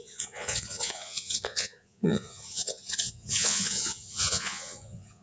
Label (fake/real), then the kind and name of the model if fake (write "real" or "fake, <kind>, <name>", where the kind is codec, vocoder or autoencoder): fake, vocoder, Vocos